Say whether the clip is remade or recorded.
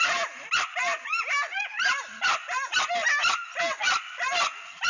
recorded